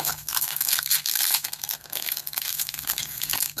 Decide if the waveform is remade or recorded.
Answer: remade